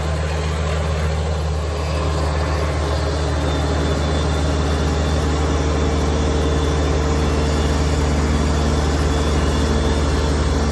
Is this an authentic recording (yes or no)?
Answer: yes